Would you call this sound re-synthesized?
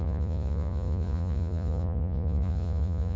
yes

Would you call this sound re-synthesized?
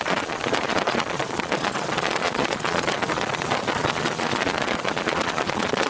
yes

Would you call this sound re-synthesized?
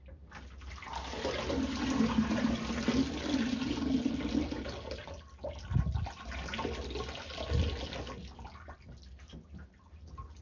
no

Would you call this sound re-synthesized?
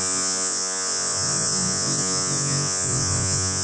yes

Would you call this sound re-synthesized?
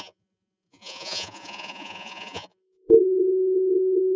yes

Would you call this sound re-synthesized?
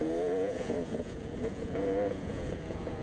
yes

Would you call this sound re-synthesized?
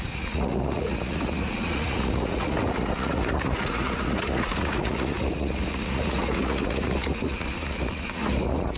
yes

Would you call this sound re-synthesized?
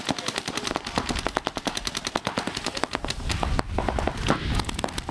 no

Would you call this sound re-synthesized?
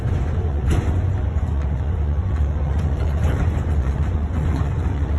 yes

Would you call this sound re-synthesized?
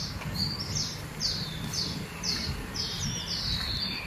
no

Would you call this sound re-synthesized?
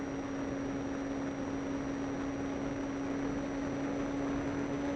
no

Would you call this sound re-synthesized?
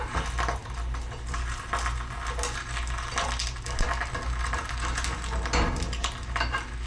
no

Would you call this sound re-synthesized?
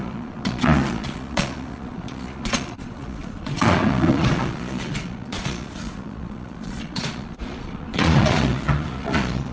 yes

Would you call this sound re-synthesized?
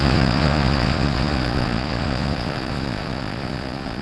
yes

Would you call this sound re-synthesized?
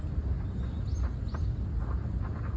no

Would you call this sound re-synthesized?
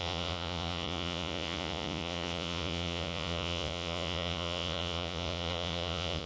yes